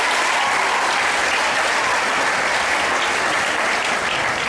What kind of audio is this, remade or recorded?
recorded